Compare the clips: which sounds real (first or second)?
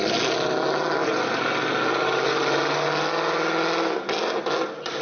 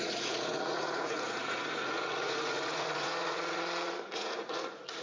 first